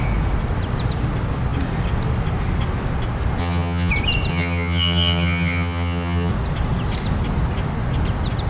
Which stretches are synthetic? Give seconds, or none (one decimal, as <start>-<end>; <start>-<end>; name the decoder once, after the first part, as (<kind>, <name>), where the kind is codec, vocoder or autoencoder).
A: 3.4-3.9 (vocoder, HiFi-GAN); 4.3-6.3